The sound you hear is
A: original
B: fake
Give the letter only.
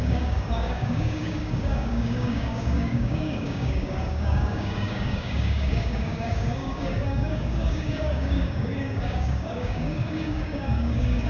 B